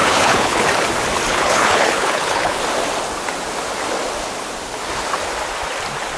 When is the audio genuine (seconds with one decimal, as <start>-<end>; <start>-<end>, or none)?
0.7-1.3; 2.6-6.2